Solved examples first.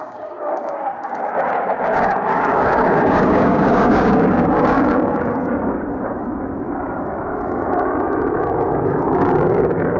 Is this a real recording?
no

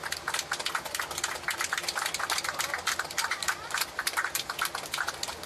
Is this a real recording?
yes